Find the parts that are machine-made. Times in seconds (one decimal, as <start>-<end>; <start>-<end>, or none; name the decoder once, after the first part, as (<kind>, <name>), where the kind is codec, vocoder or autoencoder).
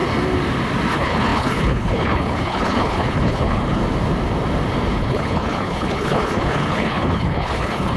0.9-3.8 (codec, HILCodec); 4.9-8.0